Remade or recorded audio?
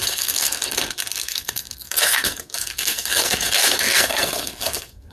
remade